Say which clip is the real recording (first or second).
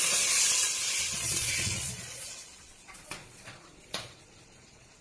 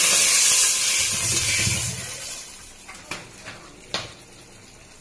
second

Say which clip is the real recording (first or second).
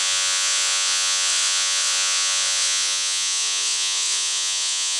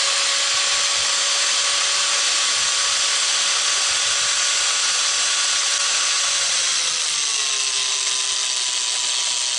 second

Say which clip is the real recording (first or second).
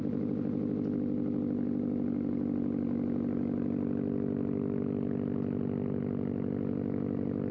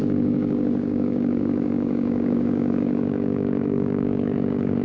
first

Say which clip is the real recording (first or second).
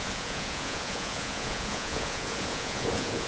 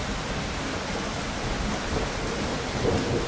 second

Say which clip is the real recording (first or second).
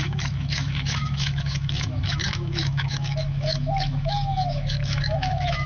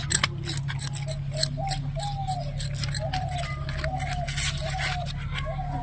second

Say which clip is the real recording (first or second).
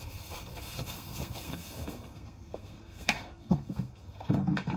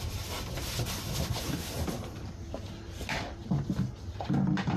second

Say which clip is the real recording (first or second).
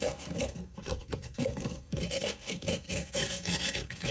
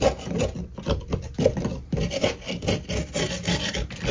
second